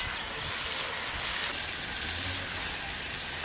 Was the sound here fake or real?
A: real